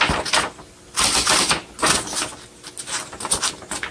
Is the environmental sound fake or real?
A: real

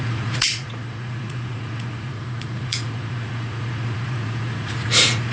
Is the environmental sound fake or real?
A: fake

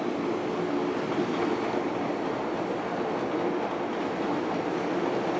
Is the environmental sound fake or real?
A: real